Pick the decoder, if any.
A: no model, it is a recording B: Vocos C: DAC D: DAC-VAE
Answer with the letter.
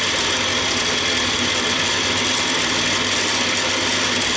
A